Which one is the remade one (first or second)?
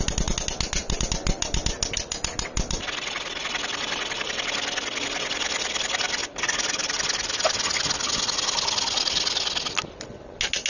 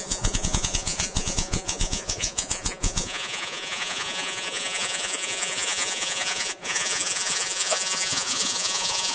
second